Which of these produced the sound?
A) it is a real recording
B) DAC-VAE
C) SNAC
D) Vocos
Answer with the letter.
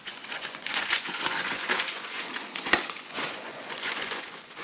D